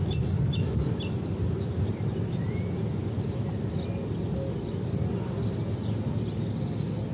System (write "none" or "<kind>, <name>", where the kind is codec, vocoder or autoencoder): none